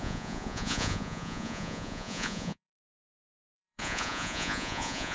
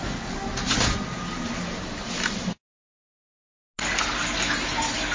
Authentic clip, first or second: second